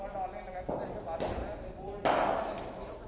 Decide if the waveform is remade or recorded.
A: recorded